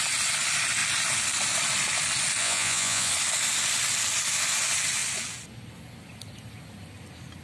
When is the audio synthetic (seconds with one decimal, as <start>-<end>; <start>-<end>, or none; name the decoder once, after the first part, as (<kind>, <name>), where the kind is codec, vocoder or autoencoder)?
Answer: 2.4-3.1 (vocoder, Vocos)